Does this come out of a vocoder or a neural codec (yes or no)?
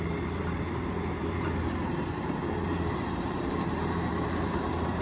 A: yes